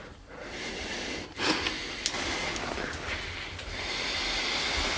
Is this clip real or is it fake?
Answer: real